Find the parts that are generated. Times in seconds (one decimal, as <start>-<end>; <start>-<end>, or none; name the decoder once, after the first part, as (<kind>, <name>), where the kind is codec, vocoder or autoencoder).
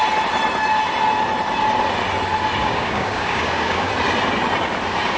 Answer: 2.6-3.9 (codec, DAC)